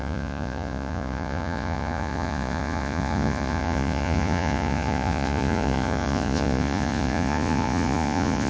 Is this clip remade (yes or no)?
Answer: yes